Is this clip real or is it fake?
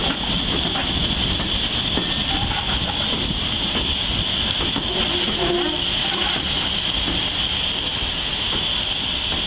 real